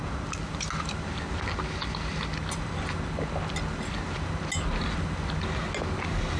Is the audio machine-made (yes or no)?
no